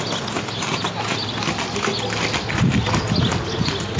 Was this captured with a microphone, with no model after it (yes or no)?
yes